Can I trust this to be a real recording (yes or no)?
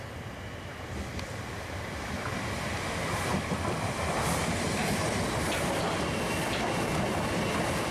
yes